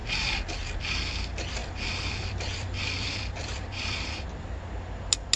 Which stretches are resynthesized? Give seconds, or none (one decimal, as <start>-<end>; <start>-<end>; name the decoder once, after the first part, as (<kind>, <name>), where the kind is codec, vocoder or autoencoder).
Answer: 1.6-4.6 (vocoder, BigVGAN v2)